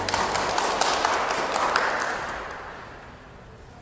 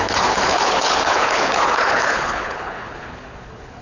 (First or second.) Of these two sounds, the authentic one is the first